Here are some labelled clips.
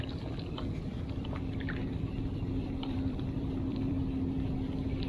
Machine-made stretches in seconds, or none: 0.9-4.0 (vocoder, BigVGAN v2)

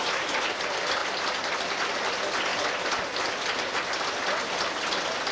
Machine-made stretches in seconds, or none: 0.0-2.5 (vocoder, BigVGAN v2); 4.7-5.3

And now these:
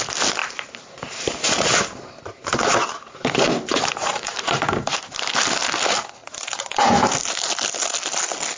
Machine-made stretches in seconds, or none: 0.4-5.0 (vocoder, BigVGAN v2); 6.2-7.0

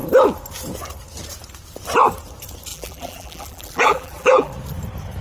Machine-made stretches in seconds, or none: 2.7-4.5 (vocoder, BigVGAN v2)

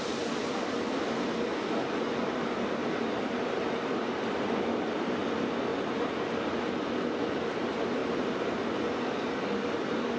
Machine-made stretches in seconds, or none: 2.8-4.2 (vocoder, BigVGAN v2); 8.0-8.6